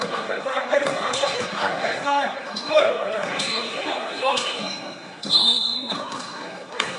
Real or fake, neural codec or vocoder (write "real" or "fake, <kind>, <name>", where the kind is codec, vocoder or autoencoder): fake, codec, SNAC